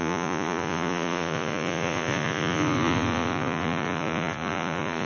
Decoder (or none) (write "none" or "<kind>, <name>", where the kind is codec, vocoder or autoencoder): vocoder, Vocos